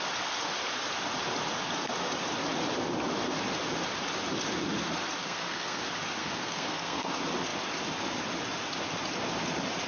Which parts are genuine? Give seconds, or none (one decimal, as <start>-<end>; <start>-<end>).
0.0-5.2; 5.8-6.2; 7.1-9.9